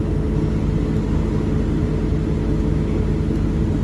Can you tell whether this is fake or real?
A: real